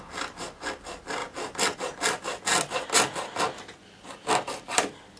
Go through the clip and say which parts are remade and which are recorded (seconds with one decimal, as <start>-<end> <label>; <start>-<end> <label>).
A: 0.0-5.2 recorded